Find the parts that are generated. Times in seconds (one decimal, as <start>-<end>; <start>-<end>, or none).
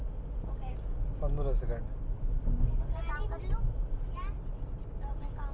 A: 1.8-2.4